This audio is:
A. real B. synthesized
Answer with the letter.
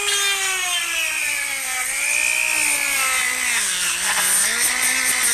A